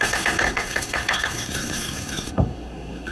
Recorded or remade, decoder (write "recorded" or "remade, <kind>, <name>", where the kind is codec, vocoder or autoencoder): remade, codec, SNAC